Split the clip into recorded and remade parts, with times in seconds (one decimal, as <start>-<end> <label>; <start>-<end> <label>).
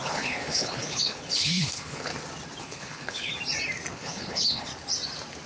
0.0-2.1 remade; 2.1-2.6 recorded; 2.6-3.3 remade; 3.3-3.9 recorded; 3.9-4.7 remade; 4.7-5.5 recorded